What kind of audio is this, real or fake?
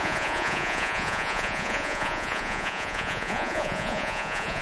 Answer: fake